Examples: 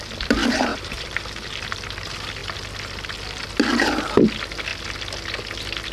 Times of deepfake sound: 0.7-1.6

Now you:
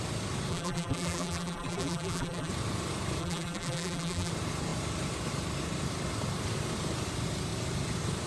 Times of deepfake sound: 0.5-2.5; 3.2-4.3

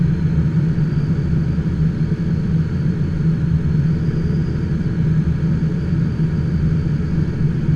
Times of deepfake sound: none

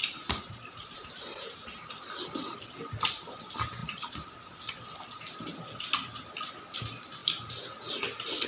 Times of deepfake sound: 0.0-1.9; 3.8-4.7

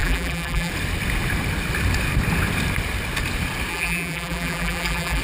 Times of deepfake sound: 0.0-0.7; 3.7-5.2

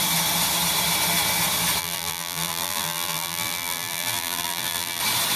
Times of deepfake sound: 1.8-5.0

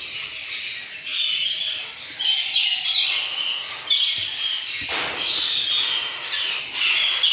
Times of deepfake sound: 3.2-6.2